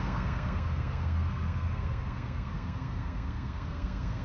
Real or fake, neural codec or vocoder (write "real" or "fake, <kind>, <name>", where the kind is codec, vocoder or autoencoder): fake, codec, SNAC